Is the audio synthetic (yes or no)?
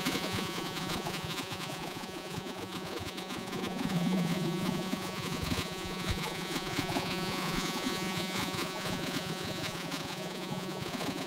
yes